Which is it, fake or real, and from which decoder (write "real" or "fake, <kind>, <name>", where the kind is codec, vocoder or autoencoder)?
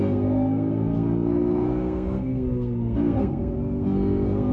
fake, codec, SNAC